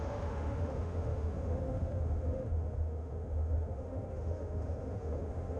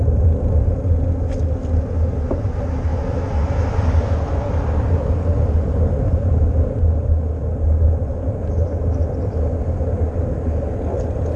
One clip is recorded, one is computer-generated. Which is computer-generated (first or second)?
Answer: first